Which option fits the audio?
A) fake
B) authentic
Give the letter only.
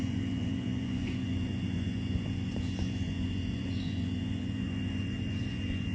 A